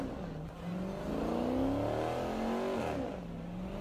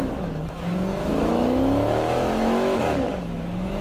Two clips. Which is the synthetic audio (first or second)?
second